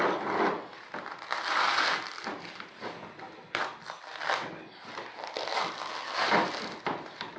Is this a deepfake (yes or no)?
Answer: no